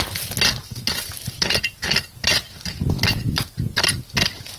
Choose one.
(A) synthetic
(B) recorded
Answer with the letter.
B